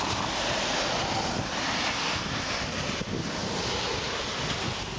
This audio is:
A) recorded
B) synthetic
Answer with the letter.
A